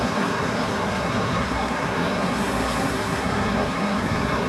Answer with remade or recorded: remade